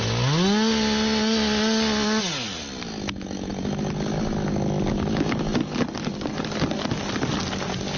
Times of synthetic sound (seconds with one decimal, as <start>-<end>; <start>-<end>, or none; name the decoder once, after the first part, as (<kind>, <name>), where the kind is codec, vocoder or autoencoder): none

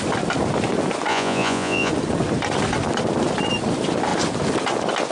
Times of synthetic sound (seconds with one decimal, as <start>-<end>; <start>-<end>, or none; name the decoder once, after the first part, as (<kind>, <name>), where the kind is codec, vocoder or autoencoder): 1.1-1.9 (vocoder, Vocos)

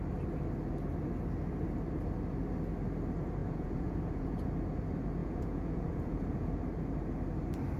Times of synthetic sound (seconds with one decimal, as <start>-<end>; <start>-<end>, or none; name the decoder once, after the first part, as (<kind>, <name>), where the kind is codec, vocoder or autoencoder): 3.4-4.5 (vocoder, Vocos); 5.2-6.5

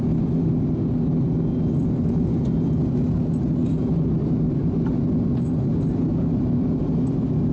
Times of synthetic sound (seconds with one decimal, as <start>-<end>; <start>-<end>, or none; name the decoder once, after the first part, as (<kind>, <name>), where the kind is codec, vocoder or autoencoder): none

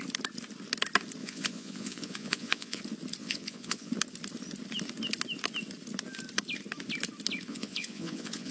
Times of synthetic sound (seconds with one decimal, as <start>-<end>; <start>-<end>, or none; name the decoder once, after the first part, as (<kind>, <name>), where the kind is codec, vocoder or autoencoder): 1.2-2.8 (vocoder, Vocos); 3.2-3.9; 7.5-8.5

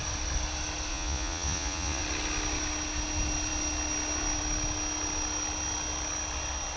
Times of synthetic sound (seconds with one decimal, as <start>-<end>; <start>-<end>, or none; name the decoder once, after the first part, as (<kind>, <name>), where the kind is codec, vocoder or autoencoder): 0.9-2.0 (vocoder, Vocos)

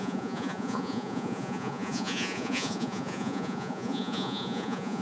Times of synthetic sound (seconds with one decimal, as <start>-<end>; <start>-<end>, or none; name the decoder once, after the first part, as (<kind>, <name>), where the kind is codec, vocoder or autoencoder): 0.0-5.0 (vocoder, Vocos)

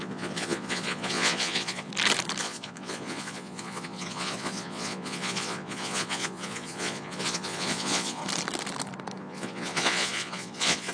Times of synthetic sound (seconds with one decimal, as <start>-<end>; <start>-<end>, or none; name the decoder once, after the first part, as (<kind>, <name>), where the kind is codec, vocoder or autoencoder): 0.0-1.9 (vocoder, Vocos); 2.4-8.2; 9.2-10.9